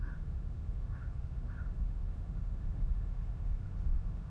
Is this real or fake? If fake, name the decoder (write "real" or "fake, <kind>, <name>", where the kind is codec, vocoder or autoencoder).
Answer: fake, autoencoder, DAC-VAE